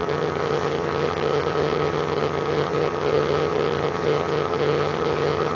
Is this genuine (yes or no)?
no